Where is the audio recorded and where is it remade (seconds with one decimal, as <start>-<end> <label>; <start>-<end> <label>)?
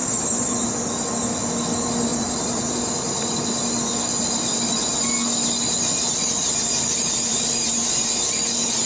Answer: 0.0-0.7 remade; 0.7-2.1 recorded; 2.1-3.3 remade; 3.3-7.3 recorded; 7.3-8.1 remade; 8.1-8.9 recorded